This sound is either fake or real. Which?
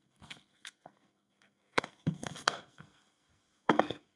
fake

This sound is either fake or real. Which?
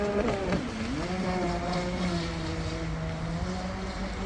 real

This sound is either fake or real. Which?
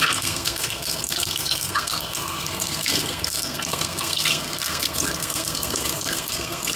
fake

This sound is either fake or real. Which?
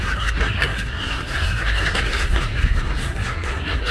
fake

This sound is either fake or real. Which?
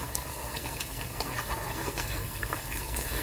fake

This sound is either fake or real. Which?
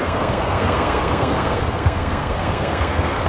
fake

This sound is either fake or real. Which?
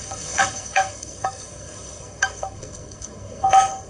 fake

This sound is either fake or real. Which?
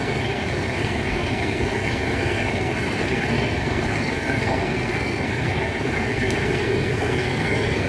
fake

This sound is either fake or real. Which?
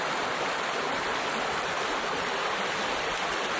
real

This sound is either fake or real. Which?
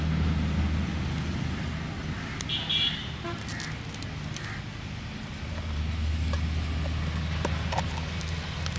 real